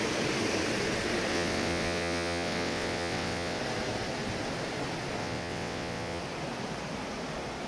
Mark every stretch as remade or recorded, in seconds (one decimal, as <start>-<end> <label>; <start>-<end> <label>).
0.0-1.3 recorded; 1.3-3.6 remade; 3.6-5.2 recorded; 5.2-6.2 remade; 6.2-7.7 recorded